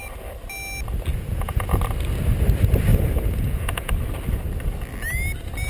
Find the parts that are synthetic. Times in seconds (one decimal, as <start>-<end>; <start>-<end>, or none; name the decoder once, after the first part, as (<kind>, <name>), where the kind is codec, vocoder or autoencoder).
1.1-1.8 (vocoder, Vocos); 2.9-3.9